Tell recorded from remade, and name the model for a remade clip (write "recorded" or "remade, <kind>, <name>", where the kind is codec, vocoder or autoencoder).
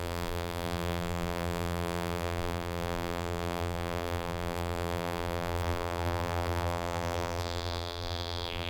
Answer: remade, vocoder, BigVGAN v2